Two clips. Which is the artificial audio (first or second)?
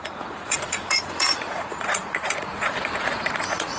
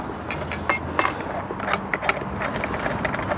first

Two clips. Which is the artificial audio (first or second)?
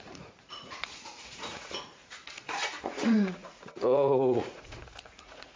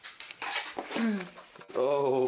first